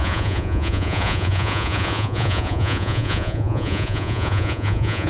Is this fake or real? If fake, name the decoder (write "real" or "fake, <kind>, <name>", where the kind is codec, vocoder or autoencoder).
fake, vocoder, Vocos